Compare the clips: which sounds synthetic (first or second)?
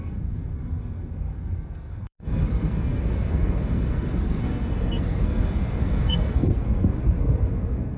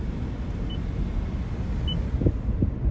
first